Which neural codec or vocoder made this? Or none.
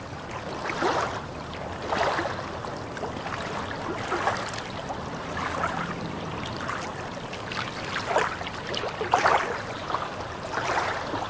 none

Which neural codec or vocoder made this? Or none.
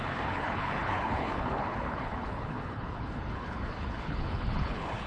codec, HILCodec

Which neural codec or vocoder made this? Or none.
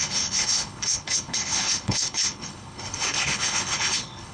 codec, HILCodec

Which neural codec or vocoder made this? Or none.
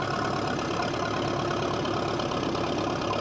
none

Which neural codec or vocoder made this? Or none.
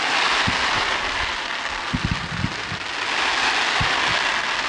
none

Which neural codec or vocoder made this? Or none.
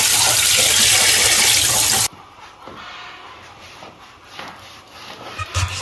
none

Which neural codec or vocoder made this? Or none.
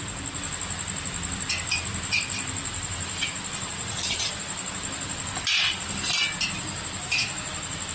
none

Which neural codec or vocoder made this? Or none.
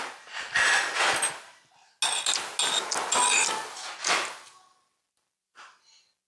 none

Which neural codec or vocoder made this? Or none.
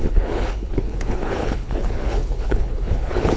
codec, HILCodec